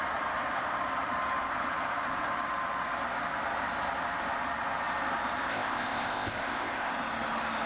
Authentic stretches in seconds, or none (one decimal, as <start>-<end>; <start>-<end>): 0.0-5.5; 6.9-7.7